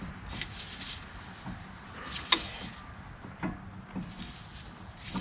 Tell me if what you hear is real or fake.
real